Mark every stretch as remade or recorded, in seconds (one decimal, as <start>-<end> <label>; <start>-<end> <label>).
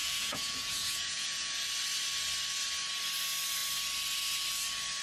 0.0-1.5 remade; 1.5-5.0 recorded